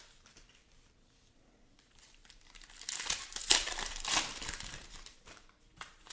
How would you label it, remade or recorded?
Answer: remade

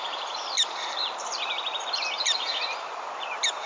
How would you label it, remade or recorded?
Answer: remade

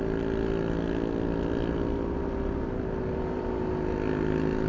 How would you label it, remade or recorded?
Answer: recorded